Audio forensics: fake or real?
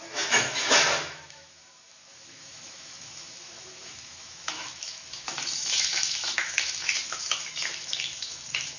fake